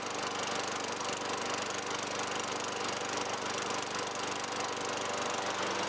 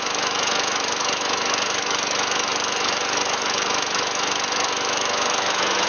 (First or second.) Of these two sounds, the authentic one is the first